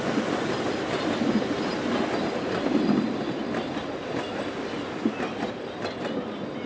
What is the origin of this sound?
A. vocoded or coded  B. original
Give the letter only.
B